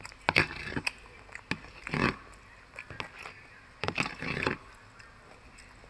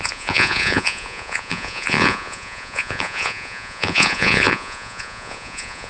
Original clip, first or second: first